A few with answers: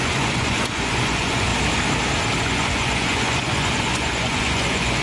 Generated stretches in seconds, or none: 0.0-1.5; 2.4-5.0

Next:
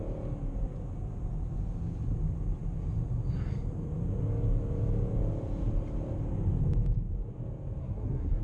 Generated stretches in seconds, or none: 7.8-8.4

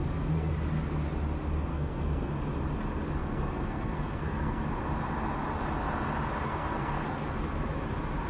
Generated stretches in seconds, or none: 0.0-0.5; 1.7-2.3; 3.2-4.6; 6.5-7.4

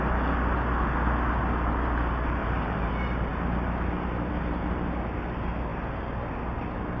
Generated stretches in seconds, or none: 2.4-2.9